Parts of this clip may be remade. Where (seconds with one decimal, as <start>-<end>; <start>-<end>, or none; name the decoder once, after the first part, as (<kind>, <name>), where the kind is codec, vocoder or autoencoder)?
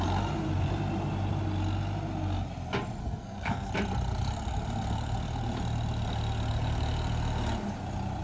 3.0-3.7 (codec, SNAC)